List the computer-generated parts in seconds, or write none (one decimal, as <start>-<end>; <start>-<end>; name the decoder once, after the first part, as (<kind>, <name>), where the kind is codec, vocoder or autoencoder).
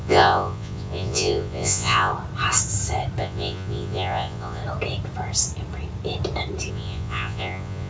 0.0-2.1 (vocoder, Vocos); 3.2-4.6; 6.7-7.9